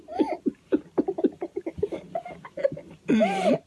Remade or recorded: remade